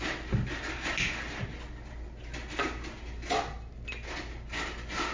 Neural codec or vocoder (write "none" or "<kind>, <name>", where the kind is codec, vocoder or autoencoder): none